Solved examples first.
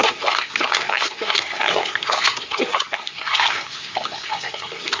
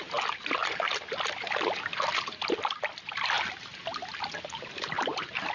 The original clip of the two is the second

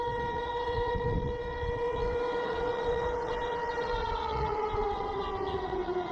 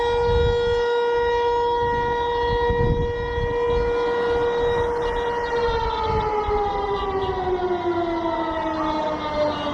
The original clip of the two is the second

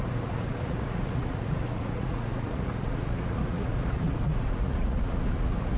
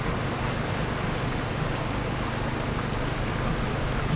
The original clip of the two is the second